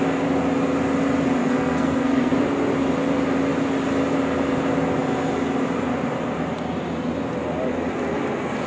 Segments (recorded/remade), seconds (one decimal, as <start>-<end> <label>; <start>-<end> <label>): 0.0-1.4 recorded; 1.4-2.3 remade; 2.3-8.7 recorded